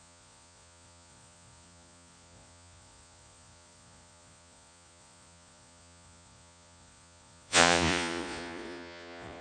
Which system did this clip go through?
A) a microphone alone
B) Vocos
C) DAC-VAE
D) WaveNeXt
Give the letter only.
B